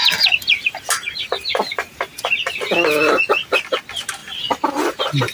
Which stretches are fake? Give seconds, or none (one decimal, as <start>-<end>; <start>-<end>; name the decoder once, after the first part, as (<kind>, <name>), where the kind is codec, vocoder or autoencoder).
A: none

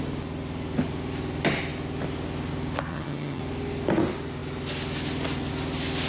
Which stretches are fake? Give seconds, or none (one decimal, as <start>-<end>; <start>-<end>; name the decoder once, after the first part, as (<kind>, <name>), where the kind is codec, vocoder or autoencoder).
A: 2.9-3.4 (vocoder, HiFi-GAN)

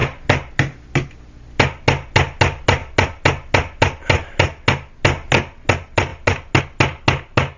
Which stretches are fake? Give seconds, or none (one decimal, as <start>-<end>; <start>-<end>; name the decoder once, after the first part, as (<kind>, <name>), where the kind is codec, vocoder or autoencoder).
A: none

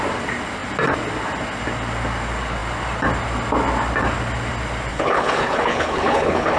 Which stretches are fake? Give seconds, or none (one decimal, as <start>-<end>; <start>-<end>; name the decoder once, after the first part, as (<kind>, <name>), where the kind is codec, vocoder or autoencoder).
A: 4.9-6.6 (codec, HILCodec)

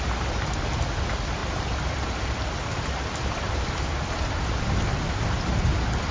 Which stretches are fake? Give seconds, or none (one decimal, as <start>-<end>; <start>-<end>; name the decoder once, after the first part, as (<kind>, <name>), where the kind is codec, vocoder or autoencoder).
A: 1.4-5.1 (vocoder, BigVGAN v2)